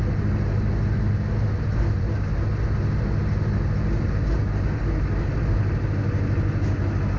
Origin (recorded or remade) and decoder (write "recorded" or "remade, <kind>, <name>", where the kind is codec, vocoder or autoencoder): recorded